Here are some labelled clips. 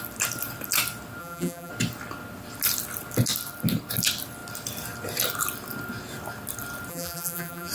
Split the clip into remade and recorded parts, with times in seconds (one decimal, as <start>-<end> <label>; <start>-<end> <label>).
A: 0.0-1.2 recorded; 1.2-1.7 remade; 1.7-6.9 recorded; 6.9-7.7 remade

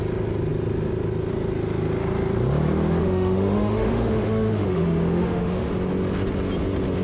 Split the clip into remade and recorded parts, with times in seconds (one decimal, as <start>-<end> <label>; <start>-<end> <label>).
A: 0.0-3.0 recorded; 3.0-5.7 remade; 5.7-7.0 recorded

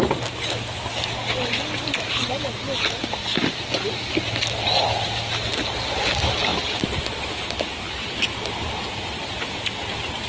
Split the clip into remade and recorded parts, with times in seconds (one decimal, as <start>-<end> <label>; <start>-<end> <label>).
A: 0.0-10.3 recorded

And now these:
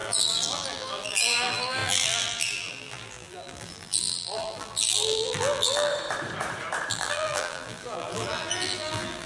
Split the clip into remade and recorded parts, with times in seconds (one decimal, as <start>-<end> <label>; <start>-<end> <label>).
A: 0.0-5.9 remade; 5.9-6.9 recorded; 6.9-9.3 remade